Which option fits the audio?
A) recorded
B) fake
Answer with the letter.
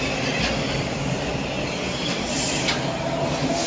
A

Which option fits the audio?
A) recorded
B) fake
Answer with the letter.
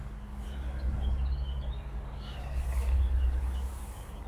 B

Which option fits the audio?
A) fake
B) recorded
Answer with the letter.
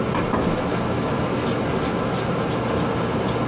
B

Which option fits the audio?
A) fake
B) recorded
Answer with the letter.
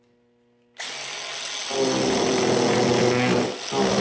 B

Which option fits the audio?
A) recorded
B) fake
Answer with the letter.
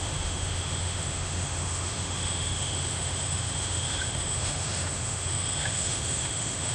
B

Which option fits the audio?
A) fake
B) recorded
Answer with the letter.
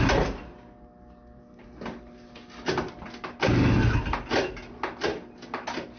B